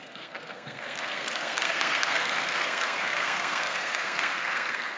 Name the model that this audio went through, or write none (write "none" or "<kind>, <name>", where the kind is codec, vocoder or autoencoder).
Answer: codec, SNAC